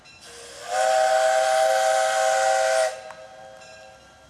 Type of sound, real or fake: real